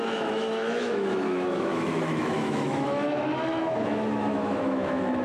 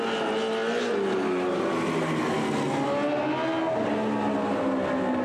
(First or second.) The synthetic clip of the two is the first